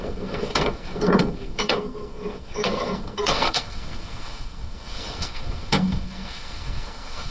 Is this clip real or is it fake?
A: fake